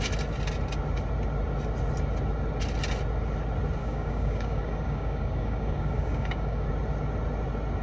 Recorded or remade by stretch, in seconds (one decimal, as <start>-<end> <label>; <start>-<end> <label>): 0.0-3.8 recorded; 3.8-6.7 remade; 6.7-7.8 recorded